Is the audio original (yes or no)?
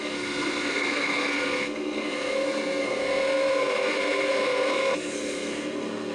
no